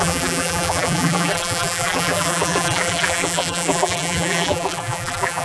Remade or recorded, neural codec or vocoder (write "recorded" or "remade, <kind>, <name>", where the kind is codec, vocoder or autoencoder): remade, vocoder, BigVGAN v2